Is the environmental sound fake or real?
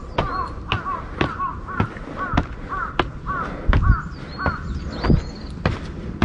real